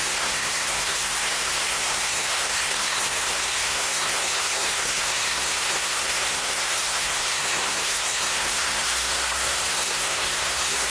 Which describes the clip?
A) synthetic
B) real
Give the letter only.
A